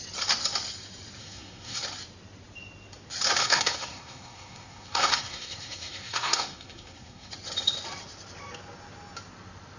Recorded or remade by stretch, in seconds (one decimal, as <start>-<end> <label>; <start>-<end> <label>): 0.0-1.2 recorded; 1.2-1.8 remade; 1.8-3.4 recorded; 3.4-7.3 remade; 7.3-9.8 recorded